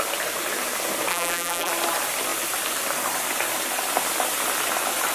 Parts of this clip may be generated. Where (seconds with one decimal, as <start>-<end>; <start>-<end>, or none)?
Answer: 1.1-1.7